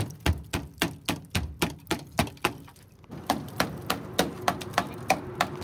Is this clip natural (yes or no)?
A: yes